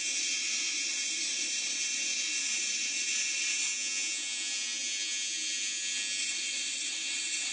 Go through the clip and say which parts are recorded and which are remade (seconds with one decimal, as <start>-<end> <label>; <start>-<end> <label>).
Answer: 0.0-3.7 remade; 3.7-6.2 recorded; 6.2-7.5 remade